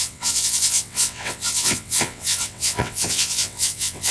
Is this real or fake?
fake